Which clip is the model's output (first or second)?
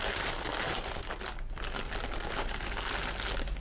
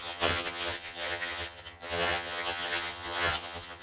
second